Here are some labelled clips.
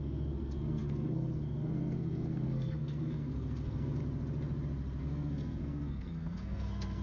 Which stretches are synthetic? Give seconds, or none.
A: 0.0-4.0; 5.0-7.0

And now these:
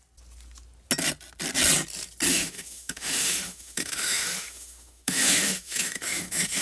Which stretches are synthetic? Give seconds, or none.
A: 2.3-6.6

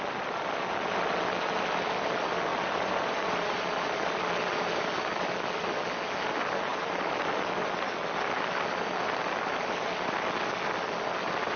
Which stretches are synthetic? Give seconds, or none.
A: 2.5-4.2; 6.7-7.3